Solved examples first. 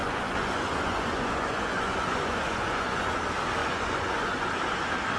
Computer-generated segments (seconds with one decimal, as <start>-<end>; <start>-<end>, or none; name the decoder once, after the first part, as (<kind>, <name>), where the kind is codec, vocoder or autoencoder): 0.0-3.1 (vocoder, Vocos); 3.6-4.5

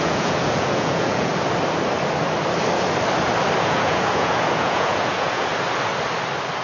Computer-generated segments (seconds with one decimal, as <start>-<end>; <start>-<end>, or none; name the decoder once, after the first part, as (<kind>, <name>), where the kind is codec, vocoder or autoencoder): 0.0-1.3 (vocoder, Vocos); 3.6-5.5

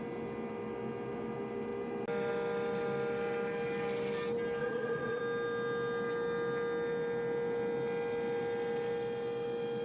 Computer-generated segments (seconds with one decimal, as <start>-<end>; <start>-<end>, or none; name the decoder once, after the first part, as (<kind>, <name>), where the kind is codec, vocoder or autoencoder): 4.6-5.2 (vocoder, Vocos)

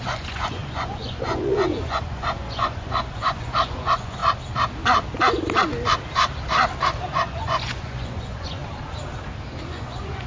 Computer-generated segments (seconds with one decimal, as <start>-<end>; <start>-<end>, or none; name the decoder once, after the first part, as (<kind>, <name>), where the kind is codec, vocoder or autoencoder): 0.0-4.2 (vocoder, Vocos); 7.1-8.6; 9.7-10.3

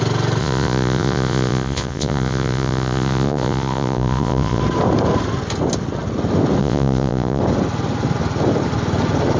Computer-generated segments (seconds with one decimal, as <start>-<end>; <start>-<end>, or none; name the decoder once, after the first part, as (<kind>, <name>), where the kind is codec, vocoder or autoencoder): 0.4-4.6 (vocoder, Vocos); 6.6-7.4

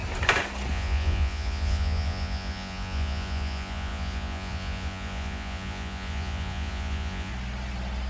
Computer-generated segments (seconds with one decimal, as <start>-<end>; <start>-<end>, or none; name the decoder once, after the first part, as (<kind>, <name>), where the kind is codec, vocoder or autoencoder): 0.7-7.3 (vocoder, Vocos)

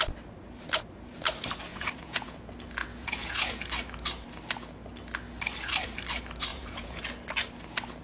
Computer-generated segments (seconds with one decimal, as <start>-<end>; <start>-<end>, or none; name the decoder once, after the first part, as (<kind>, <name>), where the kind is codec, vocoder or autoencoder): 1.7-2.4 (vocoder, Vocos); 2.8-3.6; 6.5-7.0